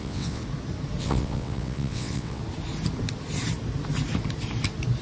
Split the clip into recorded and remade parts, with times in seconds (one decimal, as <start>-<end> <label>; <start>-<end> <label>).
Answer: 0.0-0.4 remade; 0.4-1.0 recorded; 1.0-2.4 remade; 2.4-5.0 recorded